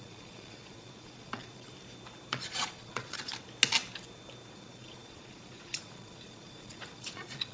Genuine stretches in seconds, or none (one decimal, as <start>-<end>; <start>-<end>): 1.7-2.3; 3.3-4.5